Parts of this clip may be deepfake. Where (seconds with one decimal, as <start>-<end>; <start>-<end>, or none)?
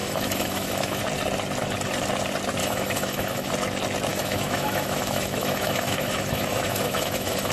0.0-1.0; 2.6-3.5; 4.1-7.5